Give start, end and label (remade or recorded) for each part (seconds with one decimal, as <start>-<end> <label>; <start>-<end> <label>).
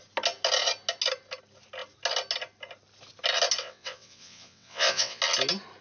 0.0-3.6 recorded; 3.6-5.2 remade; 5.2-5.8 recorded